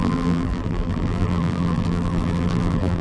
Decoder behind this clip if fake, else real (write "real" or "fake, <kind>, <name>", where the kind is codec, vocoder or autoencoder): fake, vocoder, BigVGAN v2